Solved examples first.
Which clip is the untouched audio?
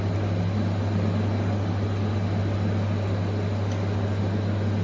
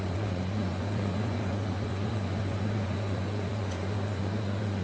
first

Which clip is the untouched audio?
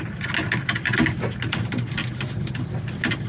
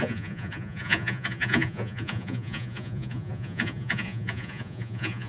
first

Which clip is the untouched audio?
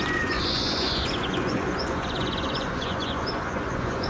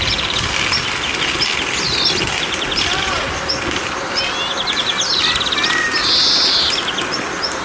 second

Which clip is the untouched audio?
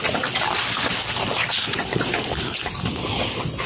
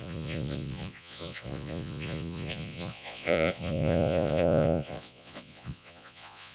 first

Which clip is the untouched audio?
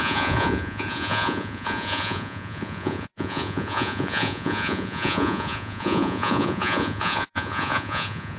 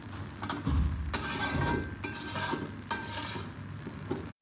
second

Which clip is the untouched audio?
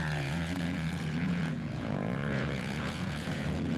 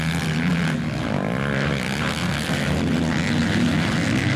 second